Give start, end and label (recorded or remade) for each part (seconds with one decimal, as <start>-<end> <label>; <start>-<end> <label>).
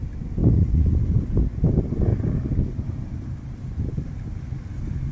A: 0.0-2.1 recorded; 2.1-5.1 remade